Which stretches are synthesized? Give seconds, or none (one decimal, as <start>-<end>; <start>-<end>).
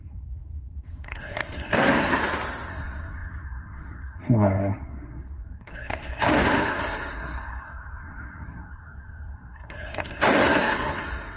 0.0-2.2; 2.7-11.4